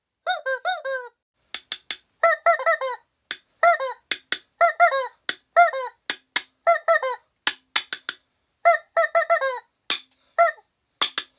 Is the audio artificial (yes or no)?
no